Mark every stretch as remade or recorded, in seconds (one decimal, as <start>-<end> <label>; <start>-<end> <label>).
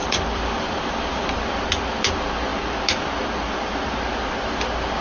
0.0-1.3 remade; 1.3-5.0 recorded